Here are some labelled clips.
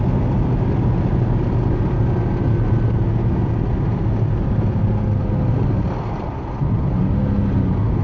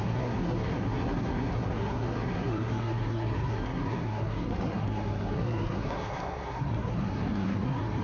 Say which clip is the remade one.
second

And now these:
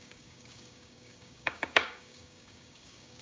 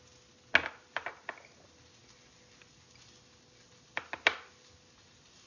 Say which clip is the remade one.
first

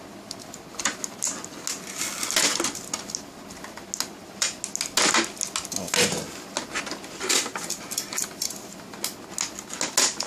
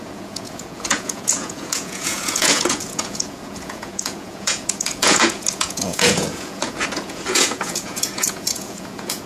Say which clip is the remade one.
second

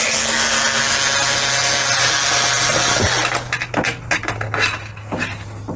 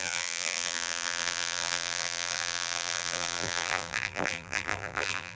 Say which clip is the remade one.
second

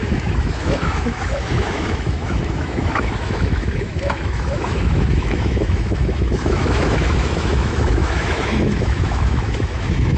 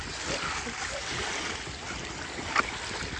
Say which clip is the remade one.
first